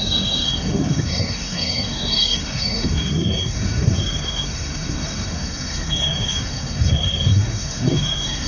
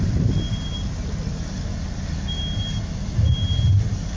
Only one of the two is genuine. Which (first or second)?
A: second